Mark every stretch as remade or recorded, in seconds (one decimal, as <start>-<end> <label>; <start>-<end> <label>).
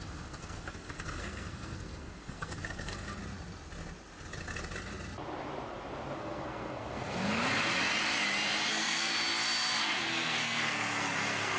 0.0-3.2 remade; 3.2-6.2 recorded; 6.2-7.4 remade; 7.4-8.7 recorded; 8.7-9.1 remade; 9.1-9.8 recorded; 9.8-11.6 remade